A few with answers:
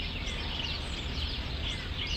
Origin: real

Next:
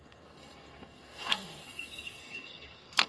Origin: fake